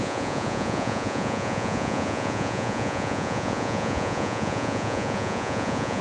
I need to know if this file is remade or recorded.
remade